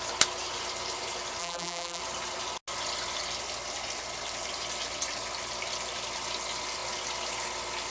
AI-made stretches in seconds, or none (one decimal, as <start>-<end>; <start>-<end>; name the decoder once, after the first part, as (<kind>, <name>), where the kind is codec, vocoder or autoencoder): 1.4-2.0 (vocoder, BigVGAN v2)